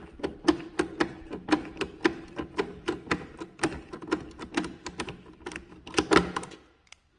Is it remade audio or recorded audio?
recorded